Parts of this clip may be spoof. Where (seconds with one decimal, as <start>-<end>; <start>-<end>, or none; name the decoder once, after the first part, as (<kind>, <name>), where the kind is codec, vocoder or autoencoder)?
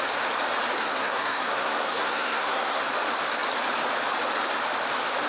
0.8-2.8 (codec, SNAC)